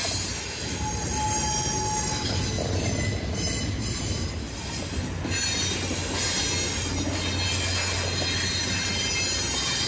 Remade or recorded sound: recorded